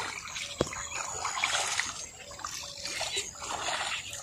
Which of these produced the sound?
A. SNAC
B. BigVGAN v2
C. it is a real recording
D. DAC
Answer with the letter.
C